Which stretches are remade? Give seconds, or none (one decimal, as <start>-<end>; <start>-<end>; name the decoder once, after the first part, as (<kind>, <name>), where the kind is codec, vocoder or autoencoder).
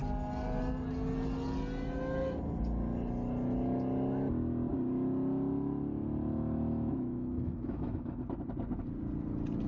6.7-8.2 (autoencoder, DAC-VAE)